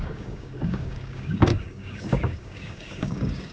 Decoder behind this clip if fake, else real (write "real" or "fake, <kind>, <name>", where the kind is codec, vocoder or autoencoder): fake, codec, DAC